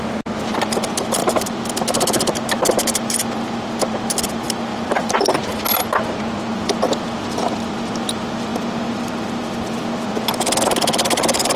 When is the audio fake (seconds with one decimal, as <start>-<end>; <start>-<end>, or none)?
1.2-1.7; 4.7-5.2; 8.5-9.4